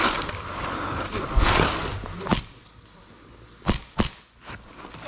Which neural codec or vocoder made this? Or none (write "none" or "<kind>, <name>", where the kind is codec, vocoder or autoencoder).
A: none